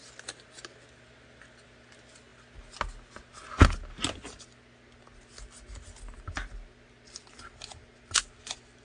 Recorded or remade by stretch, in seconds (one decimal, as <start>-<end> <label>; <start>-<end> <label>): 0.0-8.8 recorded